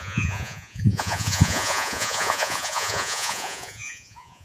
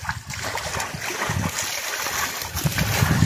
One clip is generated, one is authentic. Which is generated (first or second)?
first